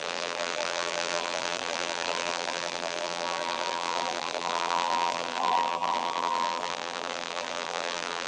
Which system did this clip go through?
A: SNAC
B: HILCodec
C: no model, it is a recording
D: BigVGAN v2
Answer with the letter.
D